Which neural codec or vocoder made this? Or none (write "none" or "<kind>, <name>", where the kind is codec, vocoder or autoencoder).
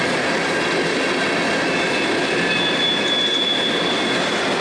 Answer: none